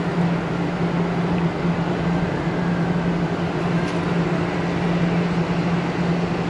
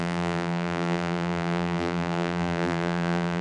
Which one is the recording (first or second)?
first